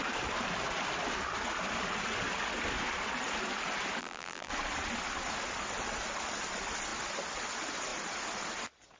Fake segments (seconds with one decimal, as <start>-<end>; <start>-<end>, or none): 4.0-4.5